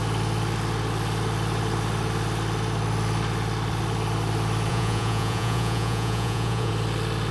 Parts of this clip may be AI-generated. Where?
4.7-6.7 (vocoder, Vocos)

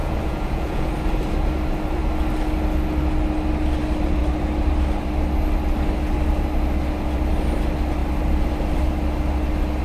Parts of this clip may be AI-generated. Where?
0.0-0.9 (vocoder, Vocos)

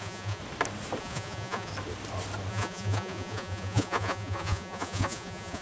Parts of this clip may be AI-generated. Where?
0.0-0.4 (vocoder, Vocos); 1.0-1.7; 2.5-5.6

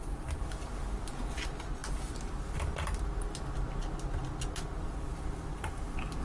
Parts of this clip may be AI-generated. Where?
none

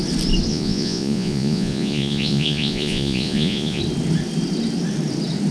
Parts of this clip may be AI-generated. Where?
0.5-3.8 (vocoder, Vocos)

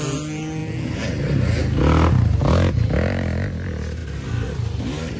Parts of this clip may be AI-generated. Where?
none